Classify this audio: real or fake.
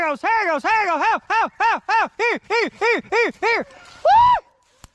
real